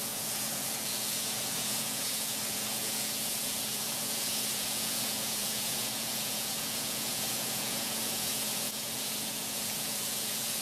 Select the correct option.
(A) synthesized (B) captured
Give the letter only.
A